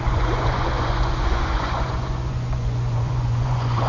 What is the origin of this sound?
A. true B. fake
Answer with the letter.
B